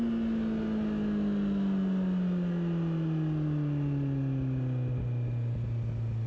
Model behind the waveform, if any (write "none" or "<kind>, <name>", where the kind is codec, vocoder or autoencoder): none